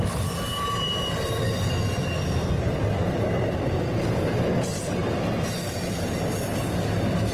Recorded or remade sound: recorded